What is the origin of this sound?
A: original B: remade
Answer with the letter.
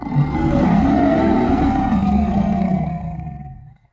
B